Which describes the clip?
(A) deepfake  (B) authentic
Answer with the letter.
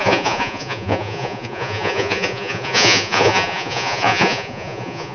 A